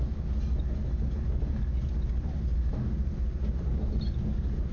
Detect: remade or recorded recorded